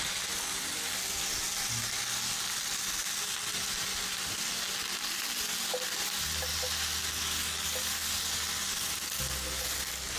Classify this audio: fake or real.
real